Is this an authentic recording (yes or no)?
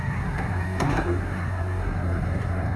no